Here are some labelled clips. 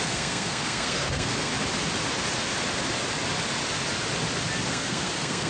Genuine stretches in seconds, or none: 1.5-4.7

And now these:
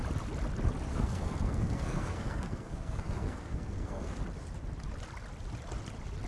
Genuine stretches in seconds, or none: 0.0-0.9; 4.2-6.3

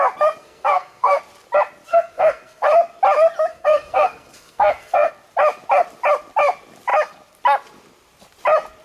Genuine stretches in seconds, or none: 0.0-0.4; 1.2-1.9; 2.7-3.5; 5.1-8.8

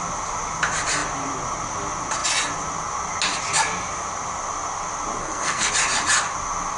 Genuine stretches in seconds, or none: 0.0-5.2; 5.7-6.8